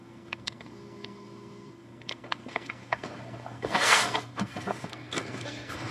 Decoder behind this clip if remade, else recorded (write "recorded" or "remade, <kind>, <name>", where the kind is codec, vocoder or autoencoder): remade, codec, SNAC